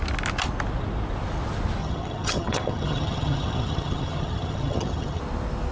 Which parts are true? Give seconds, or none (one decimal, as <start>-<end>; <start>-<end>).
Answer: 0.0-1.8; 5.2-5.7